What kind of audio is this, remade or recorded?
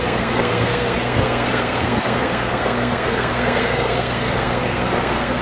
remade